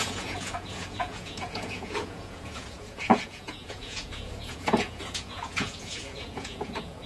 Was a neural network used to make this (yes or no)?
yes